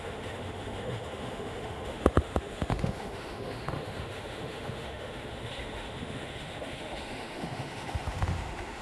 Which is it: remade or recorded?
remade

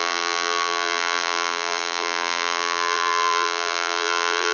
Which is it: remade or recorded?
remade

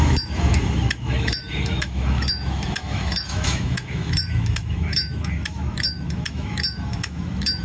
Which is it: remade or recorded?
remade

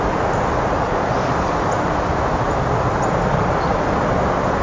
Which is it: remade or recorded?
recorded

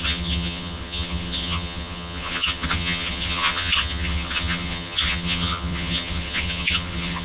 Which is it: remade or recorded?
remade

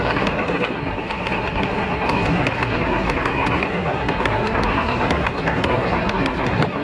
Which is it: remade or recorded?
remade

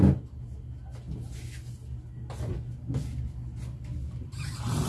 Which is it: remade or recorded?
recorded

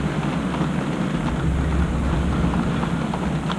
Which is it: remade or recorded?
recorded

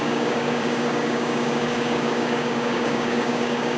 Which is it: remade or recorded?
remade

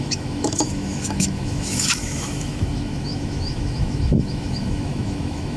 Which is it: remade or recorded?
remade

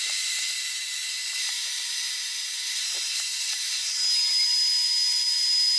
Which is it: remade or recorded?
recorded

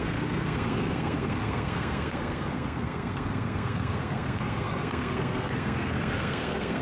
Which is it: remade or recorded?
remade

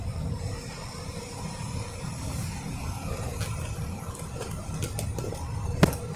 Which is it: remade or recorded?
recorded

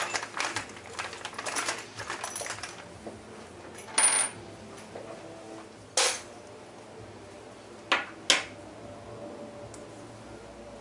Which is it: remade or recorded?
recorded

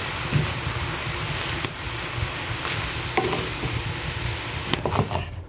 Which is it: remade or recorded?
recorded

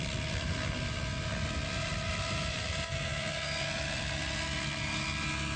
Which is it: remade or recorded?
recorded